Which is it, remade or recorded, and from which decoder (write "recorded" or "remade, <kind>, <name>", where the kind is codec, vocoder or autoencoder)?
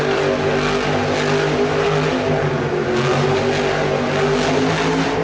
recorded